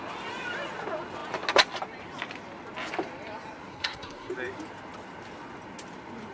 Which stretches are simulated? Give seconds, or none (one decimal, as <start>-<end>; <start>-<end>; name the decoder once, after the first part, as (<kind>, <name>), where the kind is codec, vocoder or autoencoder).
3.7-4.3 (codec, SNAC)